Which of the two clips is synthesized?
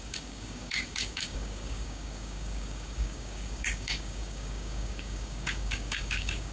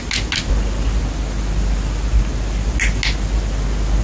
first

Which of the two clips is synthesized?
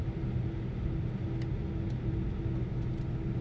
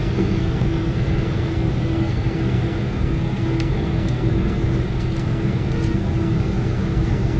second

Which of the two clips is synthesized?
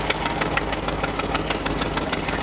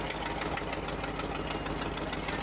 first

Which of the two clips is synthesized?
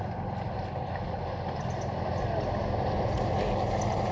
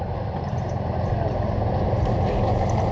second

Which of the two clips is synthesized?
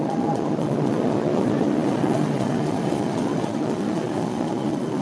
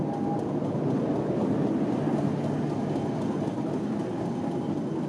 first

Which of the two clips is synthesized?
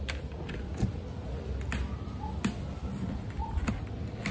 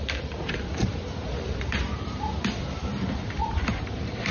second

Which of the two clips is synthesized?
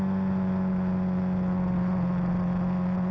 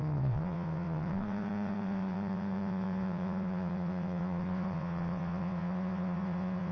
second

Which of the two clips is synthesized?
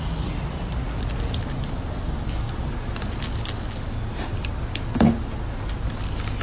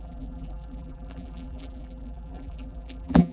second